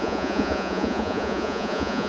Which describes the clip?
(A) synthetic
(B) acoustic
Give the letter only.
A